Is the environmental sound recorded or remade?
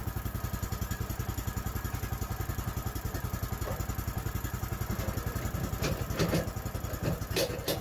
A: recorded